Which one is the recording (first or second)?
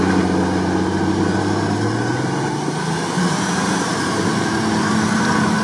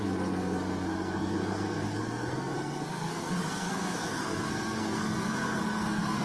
first